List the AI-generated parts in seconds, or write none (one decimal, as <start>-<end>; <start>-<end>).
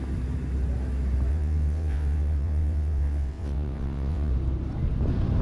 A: 1.3-4.3